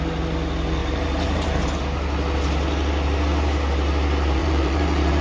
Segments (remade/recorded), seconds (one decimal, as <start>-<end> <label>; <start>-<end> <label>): 0.0-0.8 recorded; 0.8-1.8 remade; 1.8-4.4 recorded; 4.4-5.2 remade

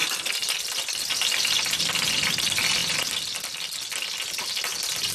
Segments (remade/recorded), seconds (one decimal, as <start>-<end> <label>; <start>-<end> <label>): 0.0-5.1 recorded

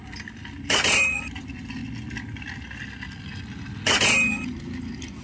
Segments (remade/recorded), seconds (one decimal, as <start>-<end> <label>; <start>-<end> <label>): 0.0-1.8 remade; 1.8-5.2 recorded

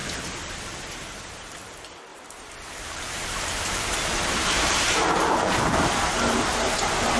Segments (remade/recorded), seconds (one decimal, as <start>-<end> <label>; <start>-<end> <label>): 0.0-0.6 remade; 0.6-2.1 recorded; 2.1-5.9 remade; 5.9-7.2 recorded

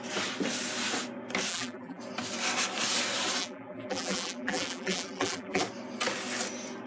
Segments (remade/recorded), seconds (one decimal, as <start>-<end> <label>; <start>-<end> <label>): 0.0-1.5 recorded; 1.5-2.0 remade; 2.0-3.4 recorded; 3.4-5.6 remade; 5.6-6.9 recorded

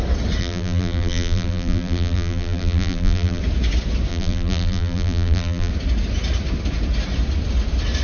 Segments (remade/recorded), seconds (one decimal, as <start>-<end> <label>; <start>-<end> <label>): 0.0-0.4 recorded; 0.4-3.4 remade; 3.4-4.1 recorded; 4.1-5.7 remade; 5.7-8.0 recorded

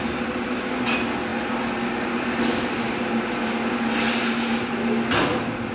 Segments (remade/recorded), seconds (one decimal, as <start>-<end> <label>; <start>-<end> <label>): 0.0-5.7 recorded